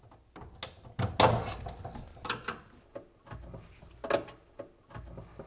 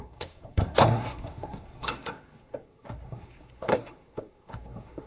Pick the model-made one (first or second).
second